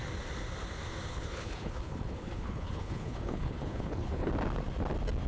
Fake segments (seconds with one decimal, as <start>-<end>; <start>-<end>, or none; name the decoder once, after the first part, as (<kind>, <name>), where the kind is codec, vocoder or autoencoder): 1.1-4.3 (codec, HILCodec)